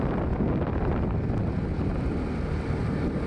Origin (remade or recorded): recorded